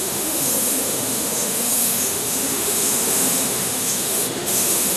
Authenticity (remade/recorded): remade